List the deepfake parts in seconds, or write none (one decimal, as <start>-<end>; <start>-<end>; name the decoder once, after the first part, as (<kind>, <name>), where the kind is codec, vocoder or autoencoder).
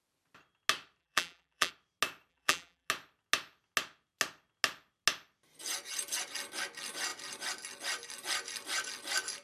1.0-1.7 (vocoder, BigVGAN v2); 2.3-2.9